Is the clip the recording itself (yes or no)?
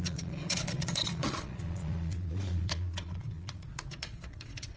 no